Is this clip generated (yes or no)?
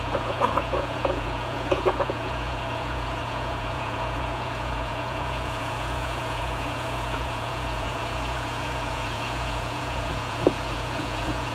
yes